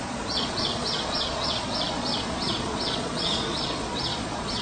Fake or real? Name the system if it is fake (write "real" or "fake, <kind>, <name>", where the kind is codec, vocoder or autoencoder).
fake, vocoder, Vocos